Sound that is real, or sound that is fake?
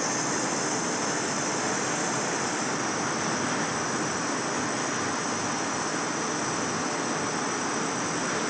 real